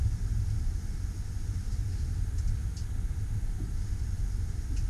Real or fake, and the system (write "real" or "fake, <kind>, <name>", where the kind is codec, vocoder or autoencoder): real